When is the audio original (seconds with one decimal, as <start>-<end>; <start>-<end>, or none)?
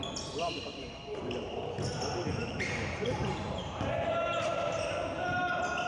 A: 0.0-0.7; 1.6-2.4; 5.0-5.9